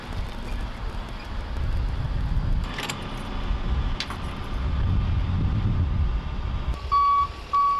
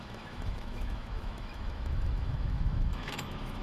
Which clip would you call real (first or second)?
first